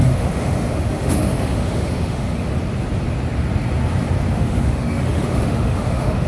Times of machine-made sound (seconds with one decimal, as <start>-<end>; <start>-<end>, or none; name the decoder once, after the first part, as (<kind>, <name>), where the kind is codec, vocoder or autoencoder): 0.0-2.5 (autoencoder, DAC-VAE); 4.3-6.3